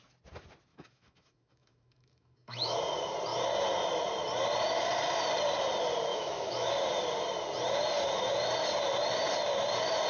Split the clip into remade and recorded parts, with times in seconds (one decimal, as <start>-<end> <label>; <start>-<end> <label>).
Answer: 0.0-0.7 recorded; 0.7-2.8 remade; 2.8-6.1 recorded; 6.1-6.7 remade; 6.7-10.1 recorded